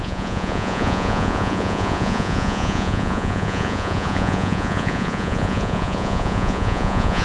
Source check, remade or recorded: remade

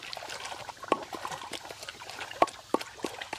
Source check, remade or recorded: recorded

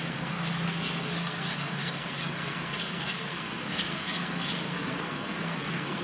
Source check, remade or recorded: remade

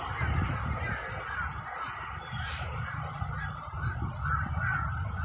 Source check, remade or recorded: recorded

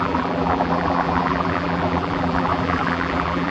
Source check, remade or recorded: remade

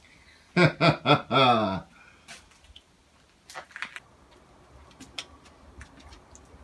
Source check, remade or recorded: recorded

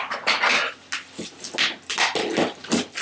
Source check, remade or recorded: recorded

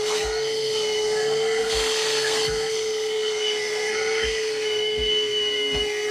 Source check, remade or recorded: remade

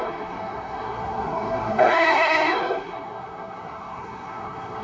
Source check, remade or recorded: remade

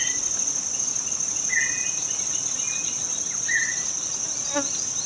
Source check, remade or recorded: recorded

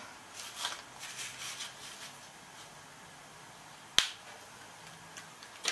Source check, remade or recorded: recorded